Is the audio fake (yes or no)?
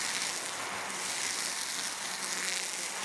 no